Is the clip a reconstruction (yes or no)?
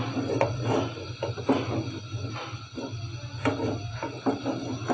no